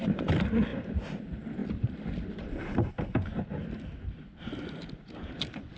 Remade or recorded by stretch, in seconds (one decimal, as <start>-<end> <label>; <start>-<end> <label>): 0.0-0.7 remade; 0.7-1.2 recorded; 1.2-1.6 remade; 1.6-5.1 recorded; 5.1-5.8 remade